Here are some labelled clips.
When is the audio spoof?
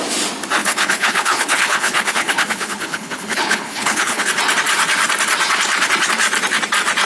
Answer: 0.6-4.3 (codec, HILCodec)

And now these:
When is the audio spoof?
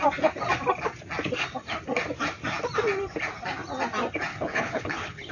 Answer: 4.3-5.3 (codec, HILCodec)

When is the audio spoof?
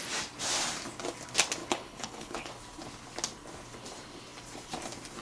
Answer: 1.6-2.5 (codec, HILCodec)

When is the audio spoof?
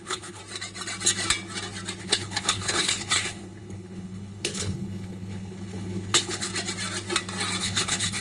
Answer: 0.0-0.4 (codec, HILCodec); 2.0-6.5; 7.6-8.2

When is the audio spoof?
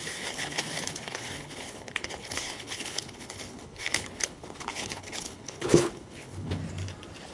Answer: 0.0-6.6 (codec, HILCodec)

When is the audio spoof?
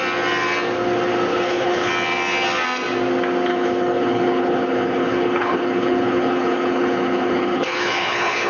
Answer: 1.3-1.9 (codec, HILCodec); 3.5-8.5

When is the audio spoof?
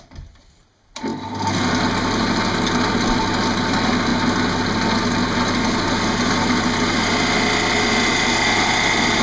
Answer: none